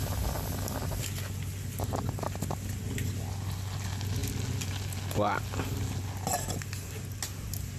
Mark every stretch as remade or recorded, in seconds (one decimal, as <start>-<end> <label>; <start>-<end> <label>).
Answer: 0.0-7.8 recorded

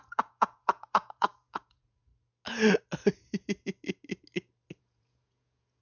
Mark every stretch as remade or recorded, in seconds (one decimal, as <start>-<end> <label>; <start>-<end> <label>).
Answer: 0.0-2.1 remade; 2.1-4.8 recorded; 4.8-5.8 remade

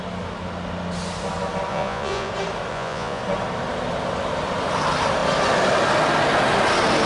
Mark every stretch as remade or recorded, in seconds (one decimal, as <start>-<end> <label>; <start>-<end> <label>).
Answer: 0.0-1.7 recorded; 1.7-2.3 remade; 2.3-2.7 recorded; 2.7-3.2 remade; 3.2-7.1 recorded

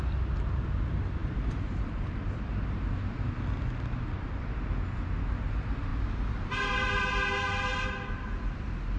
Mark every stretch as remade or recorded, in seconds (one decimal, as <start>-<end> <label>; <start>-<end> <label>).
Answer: 0.0-9.0 recorded

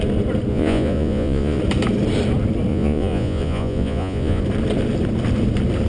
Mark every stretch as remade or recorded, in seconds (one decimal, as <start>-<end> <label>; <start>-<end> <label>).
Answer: 0.0-0.5 recorded; 0.5-1.6 remade; 1.6-2.7 recorded; 2.7-4.4 remade; 4.4-5.9 recorded

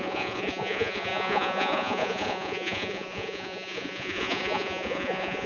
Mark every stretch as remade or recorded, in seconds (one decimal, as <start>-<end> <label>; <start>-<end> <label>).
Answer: 0.0-5.5 remade